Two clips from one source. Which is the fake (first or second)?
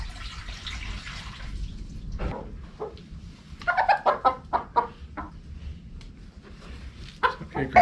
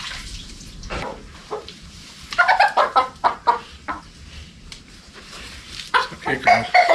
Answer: second